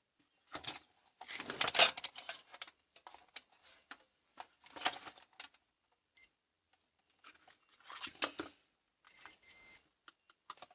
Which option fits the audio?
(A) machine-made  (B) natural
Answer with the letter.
B